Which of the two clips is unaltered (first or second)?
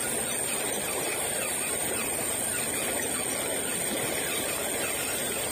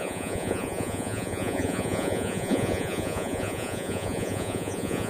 first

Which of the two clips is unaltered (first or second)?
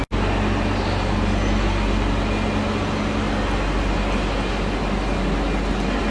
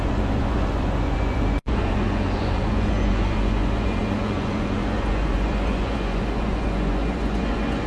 first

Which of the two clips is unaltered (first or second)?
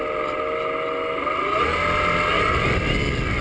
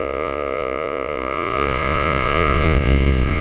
first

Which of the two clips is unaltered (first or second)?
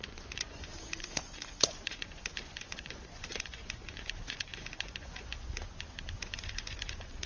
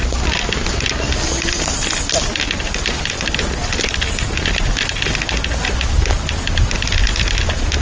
second